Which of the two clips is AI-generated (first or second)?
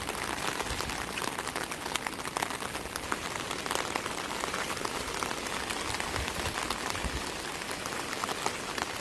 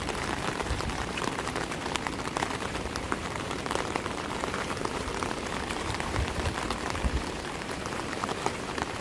second